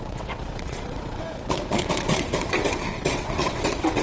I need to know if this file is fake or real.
fake